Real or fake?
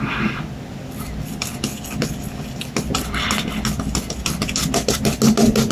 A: real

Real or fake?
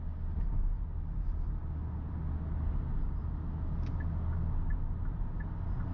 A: real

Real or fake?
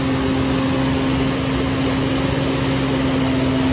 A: real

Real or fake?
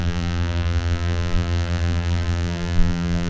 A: fake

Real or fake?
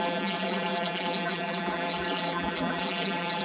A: fake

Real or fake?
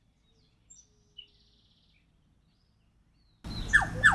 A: real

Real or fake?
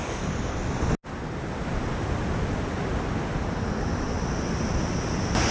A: real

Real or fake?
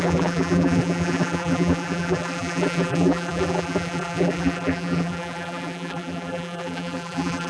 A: fake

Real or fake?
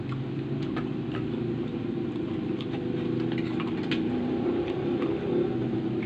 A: real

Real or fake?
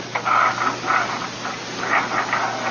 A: real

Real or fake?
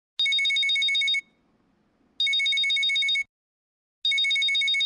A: real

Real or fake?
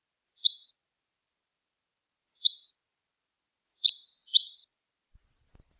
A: real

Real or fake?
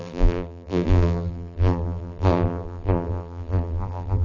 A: fake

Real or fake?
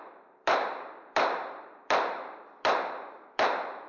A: fake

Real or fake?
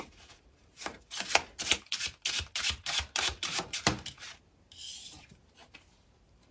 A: fake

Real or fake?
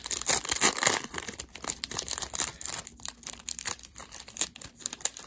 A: fake